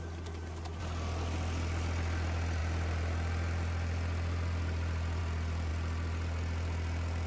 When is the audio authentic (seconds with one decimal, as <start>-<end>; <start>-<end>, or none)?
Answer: 0.0-7.3